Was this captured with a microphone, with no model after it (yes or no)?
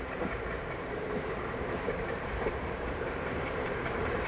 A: no